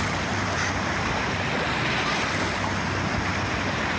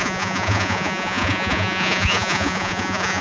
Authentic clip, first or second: first